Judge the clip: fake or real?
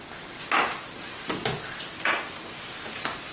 real